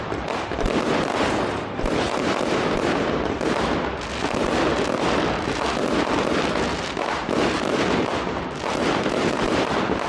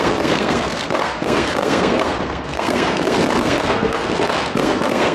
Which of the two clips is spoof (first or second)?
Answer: second